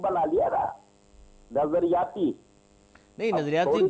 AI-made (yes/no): no